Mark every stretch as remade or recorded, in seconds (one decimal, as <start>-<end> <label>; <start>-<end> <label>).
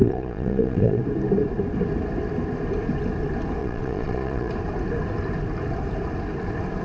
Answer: 0.0-1.0 remade; 1.0-3.6 recorded; 3.6-4.5 remade; 4.5-6.8 recorded